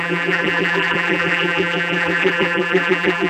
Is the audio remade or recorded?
remade